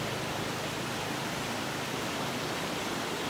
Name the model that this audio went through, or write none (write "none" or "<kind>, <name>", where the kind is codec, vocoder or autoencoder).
none